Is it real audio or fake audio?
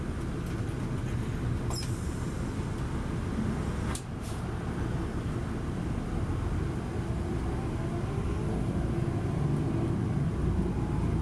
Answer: real